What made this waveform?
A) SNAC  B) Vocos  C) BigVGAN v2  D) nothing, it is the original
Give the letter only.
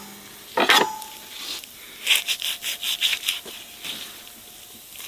D